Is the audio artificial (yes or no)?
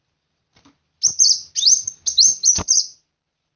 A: no